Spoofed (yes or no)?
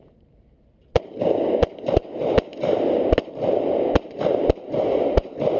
no